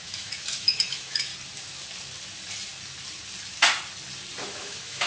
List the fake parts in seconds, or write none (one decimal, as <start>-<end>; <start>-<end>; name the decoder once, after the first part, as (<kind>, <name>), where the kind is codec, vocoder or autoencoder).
0.0-1.3 (autoencoder, DAC-VAE); 4.4-5.1